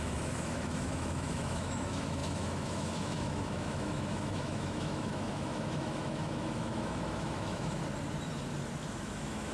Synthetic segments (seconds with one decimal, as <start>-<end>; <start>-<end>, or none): 0.0-7.8; 8.9-9.5